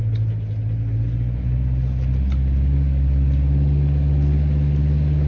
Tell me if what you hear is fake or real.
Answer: real